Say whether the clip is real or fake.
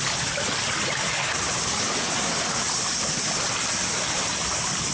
real